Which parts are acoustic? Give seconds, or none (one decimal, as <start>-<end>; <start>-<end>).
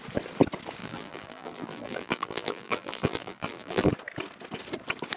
0.0-0.8; 3.9-5.2